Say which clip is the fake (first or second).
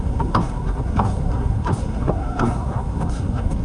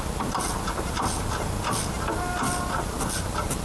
first